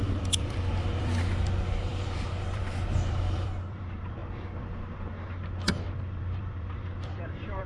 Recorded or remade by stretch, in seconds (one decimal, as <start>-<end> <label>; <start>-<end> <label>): 0.0-4.2 remade; 4.2-6.2 recorded; 6.2-7.7 remade